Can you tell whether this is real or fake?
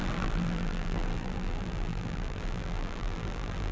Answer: fake